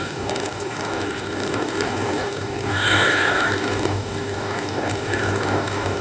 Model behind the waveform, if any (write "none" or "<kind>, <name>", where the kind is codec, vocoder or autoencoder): codec, DAC